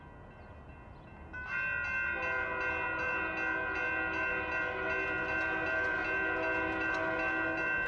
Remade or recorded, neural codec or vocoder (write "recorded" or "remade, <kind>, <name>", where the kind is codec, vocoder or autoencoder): recorded